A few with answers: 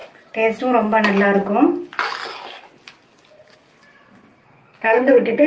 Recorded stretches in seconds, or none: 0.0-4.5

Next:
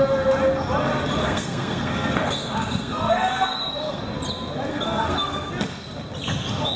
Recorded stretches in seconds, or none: 0.0-1.2; 4.0-4.7; 5.5-6.8

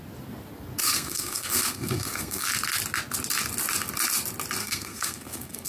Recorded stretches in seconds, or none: 0.0-0.8; 2.5-4.6

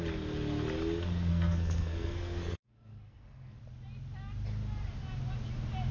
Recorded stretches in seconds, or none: 0.0-1.3; 3.6-5.9

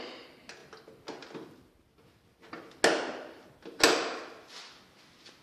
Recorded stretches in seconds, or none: 0.0-5.4

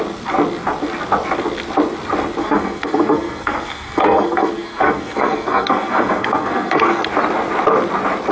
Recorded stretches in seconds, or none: 0.0-2.4; 7.0-8.3